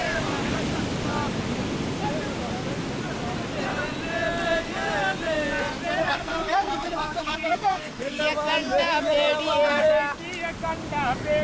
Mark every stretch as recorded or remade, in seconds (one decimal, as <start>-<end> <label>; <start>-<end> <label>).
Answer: 0.0-6.0 recorded; 6.0-8.2 remade; 8.2-11.4 recorded